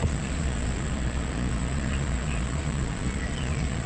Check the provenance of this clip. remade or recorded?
remade